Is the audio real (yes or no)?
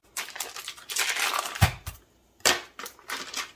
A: yes